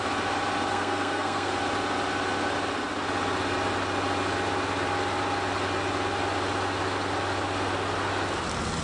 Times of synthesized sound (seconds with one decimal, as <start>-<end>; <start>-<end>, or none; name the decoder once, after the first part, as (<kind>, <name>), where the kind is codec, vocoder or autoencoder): 0.7-1.5 (codec, SNAC)